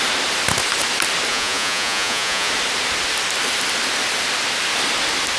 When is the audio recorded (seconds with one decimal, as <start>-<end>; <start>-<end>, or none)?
0.0-1.3; 2.5-5.4